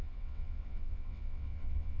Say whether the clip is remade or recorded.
remade